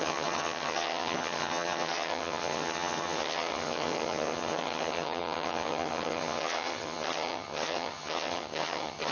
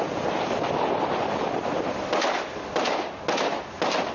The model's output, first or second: first